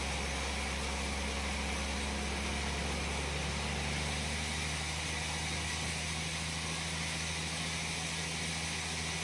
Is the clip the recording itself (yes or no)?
yes